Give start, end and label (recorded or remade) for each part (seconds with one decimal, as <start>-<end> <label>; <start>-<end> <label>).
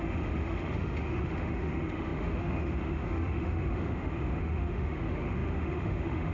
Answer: 0.0-6.3 remade